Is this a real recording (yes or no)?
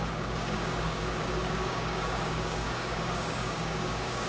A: no